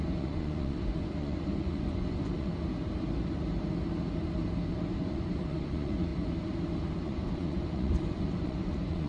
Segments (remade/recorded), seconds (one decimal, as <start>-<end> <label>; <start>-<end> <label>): 0.0-2.5 remade; 2.5-4.7 recorded; 4.7-6.1 remade; 6.1-6.9 recorded; 6.9-9.1 remade